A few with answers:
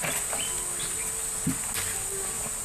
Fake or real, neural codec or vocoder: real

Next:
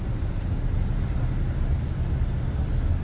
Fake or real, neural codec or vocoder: real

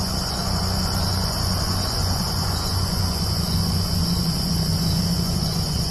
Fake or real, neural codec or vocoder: fake, vocoder, Vocos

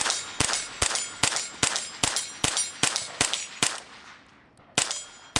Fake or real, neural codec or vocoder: real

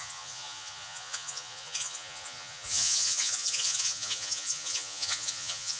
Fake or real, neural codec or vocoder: fake, vocoder, Vocos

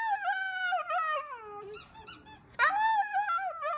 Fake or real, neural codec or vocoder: real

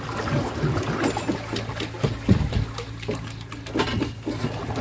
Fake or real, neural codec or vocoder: real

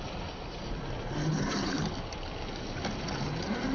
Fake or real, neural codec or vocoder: real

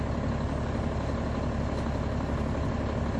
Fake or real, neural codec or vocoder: real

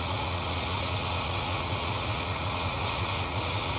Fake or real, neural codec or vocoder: fake, vocoder, Vocos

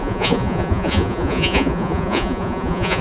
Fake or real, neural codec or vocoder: fake, vocoder, Vocos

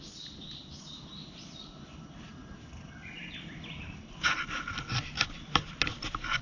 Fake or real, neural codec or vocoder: real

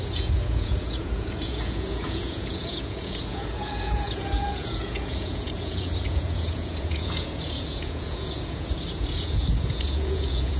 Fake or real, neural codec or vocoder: fake, vocoder, Vocos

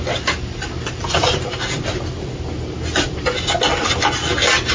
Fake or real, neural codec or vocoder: real